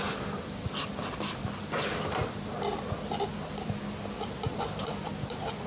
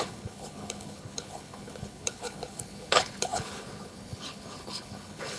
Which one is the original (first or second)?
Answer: first